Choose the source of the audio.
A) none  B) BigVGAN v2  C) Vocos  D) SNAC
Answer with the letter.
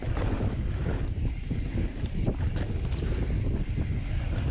A